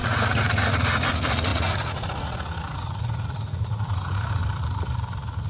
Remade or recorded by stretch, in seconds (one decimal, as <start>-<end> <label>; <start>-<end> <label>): 0.0-4.4 remade; 4.4-5.5 recorded